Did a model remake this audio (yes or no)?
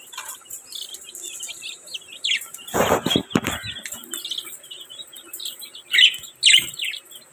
no